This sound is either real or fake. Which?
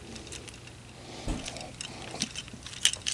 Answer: real